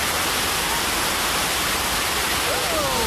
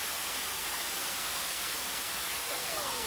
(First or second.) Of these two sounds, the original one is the first